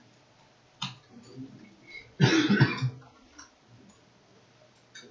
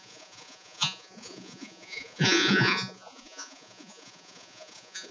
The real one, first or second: first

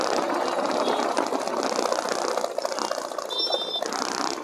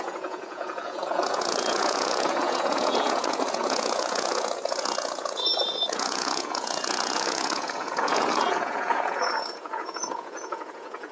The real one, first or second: first